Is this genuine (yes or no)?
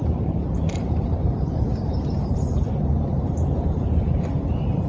no